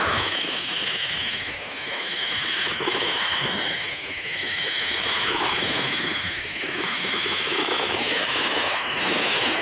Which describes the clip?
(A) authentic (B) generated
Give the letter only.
B